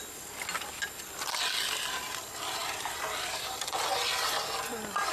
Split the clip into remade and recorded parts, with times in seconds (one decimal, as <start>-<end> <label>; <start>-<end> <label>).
0.0-2.6 recorded; 2.6-4.4 remade; 4.4-5.1 recorded